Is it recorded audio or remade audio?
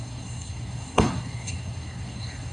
remade